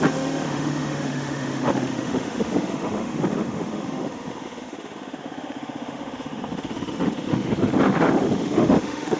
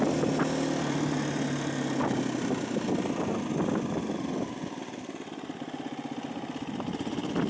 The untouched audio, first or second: second